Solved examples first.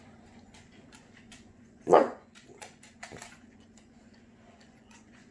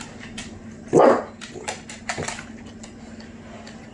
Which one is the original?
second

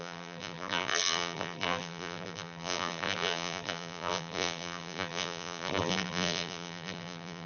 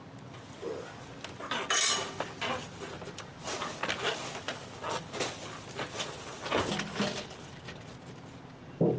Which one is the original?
second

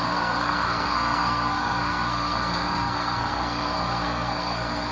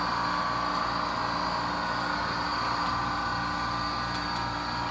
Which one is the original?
second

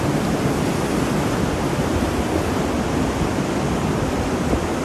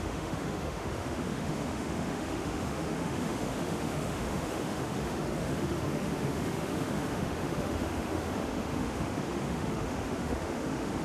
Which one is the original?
first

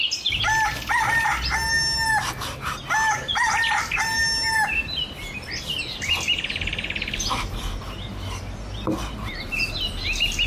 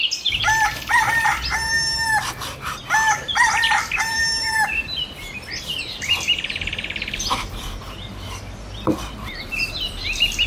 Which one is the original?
first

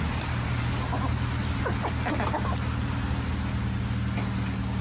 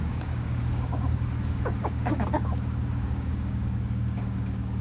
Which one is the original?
first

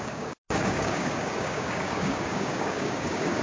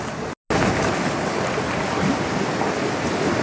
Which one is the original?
second